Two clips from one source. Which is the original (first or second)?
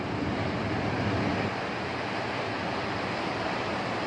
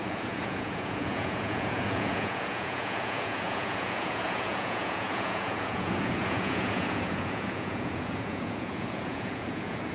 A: first